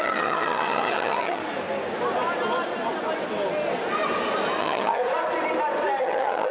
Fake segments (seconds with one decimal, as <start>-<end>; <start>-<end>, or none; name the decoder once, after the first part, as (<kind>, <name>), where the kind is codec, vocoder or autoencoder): 0.0-1.4 (vocoder, HiFi-GAN); 4.6-5.0; 6.0-6.5